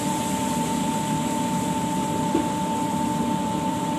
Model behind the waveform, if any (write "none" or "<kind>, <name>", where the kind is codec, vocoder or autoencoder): vocoder, BigVGAN v2